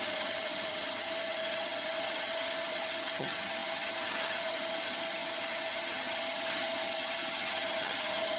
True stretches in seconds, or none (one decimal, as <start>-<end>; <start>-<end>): none